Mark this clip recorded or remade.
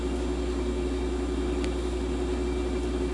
recorded